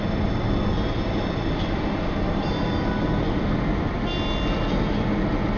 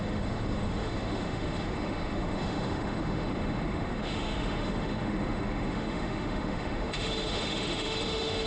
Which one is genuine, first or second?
first